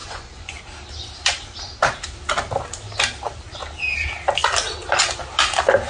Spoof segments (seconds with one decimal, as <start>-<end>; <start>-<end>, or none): 0.0-0.6